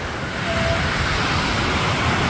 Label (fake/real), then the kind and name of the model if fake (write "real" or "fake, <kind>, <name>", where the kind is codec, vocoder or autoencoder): real